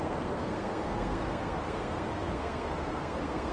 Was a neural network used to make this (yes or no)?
yes